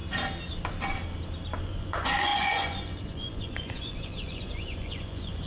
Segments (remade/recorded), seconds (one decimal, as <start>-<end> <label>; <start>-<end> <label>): 0.0-1.6 recorded; 1.6-5.5 remade